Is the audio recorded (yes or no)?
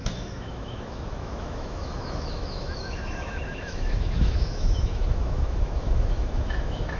no